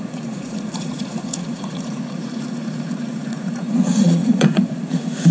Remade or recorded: remade